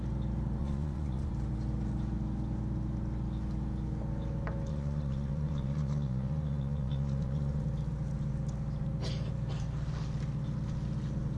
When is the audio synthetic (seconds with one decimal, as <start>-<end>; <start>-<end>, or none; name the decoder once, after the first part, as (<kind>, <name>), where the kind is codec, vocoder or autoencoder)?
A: 0.6-1.3 (vocoder, Vocos); 4.7-7.6